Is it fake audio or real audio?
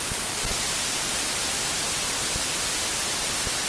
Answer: real